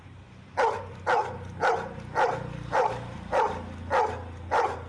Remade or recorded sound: recorded